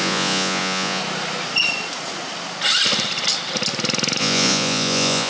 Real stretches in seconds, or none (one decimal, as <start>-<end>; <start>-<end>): 1.0-4.2